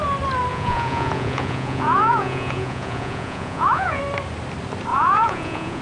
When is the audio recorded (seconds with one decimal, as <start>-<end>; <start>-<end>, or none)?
0.0-0.5; 4.0-4.9